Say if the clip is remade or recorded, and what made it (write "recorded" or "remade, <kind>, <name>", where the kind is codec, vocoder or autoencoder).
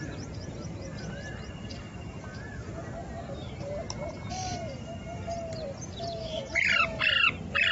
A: recorded